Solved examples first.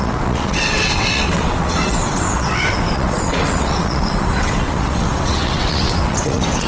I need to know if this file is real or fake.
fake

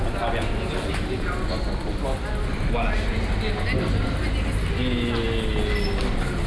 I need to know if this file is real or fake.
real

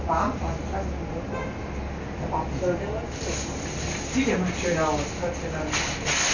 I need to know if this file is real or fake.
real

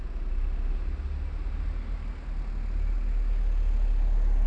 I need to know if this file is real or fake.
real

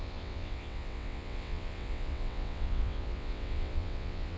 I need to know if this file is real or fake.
fake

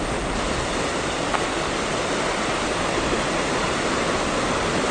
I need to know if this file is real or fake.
real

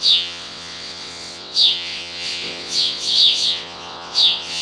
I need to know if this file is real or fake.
fake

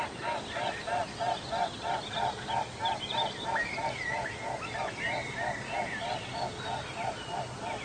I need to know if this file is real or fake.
real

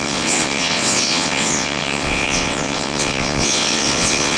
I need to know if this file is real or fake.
fake